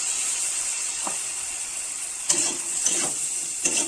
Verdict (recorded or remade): remade